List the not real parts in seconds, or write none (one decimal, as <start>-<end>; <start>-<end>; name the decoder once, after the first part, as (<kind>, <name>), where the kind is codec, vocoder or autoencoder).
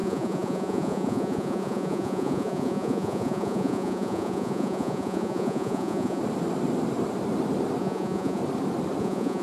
0.0-6.2 (vocoder, Vocos); 7.8-8.4; 9.0-9.4